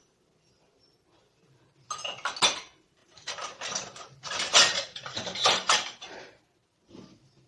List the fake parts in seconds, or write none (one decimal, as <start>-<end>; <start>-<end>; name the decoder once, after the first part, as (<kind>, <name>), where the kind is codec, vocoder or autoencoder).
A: 3.0-6.4 (vocoder, BigVGAN v2)